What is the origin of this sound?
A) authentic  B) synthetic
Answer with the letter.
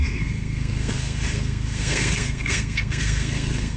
B